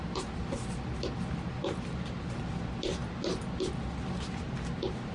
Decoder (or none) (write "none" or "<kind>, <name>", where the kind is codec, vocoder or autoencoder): none